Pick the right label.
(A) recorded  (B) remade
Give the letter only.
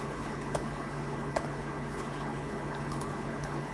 B